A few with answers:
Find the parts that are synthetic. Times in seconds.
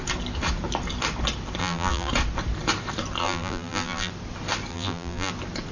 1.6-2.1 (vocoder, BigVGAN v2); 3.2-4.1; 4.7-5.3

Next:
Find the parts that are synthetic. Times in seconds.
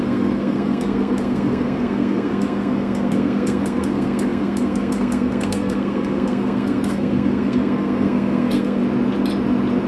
0.0-8.8 (codec, SNAC)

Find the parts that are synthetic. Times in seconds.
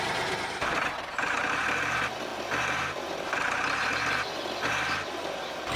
none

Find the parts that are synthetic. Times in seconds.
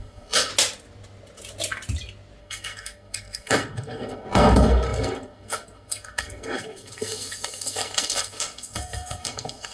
0.0-0.5 (codec, SNAC); 2.4-9.7